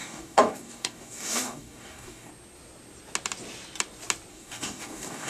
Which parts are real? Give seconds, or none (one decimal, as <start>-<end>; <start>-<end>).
2.3-4.3